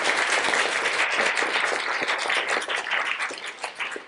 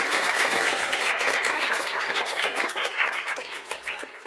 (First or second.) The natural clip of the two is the first